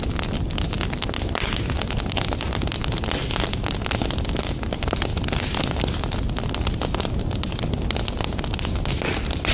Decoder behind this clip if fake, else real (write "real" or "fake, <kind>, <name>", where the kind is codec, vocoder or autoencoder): real